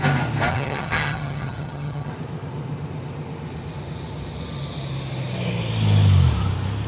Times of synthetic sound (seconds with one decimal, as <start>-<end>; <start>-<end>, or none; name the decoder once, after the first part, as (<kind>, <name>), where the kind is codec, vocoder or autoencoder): 0.5-2.1 (vocoder, HiFi-GAN)